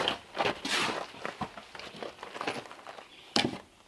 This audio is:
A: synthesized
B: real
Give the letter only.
B